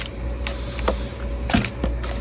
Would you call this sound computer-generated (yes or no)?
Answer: no